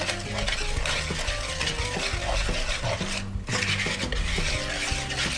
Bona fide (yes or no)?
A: yes